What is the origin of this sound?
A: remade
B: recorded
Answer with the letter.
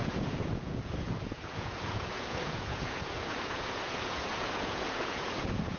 A